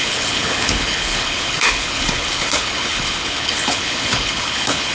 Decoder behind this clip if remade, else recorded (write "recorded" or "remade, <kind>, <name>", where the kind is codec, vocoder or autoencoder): remade, codec, HILCodec